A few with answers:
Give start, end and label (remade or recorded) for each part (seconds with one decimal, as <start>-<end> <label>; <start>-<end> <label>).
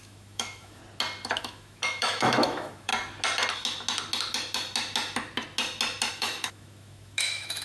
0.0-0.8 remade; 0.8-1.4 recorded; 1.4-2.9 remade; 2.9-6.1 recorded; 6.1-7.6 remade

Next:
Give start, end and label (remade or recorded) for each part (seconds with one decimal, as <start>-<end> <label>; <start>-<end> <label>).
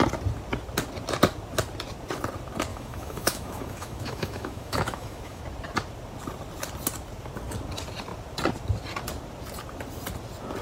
0.0-2.7 recorded; 2.7-5.4 remade; 5.4-10.6 recorded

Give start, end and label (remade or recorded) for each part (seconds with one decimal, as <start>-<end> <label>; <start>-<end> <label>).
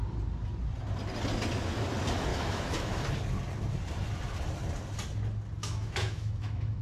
0.0-2.3 recorded; 2.3-3.0 remade; 3.0-5.6 recorded; 5.6-6.8 remade